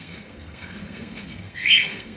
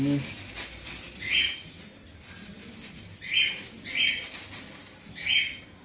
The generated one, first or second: first